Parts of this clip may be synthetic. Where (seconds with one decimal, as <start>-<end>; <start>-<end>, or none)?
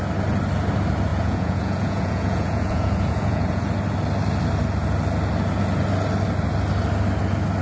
1.1-3.6